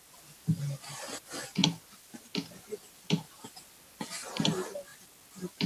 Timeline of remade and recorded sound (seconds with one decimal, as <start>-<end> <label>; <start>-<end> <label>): 0.0-5.7 recorded